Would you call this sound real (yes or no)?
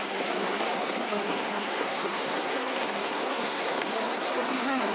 no